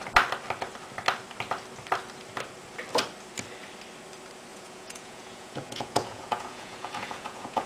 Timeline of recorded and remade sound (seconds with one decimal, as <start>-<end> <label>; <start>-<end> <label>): 0.0-4.5 recorded; 4.5-7.7 remade